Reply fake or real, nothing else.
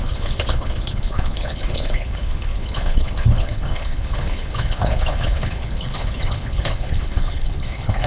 fake